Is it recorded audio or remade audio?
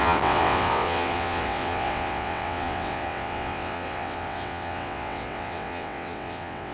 remade